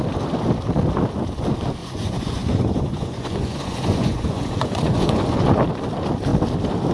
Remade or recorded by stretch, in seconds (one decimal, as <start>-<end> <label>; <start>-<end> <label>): 0.0-1.8 recorded; 1.8-5.6 remade; 5.6-6.9 recorded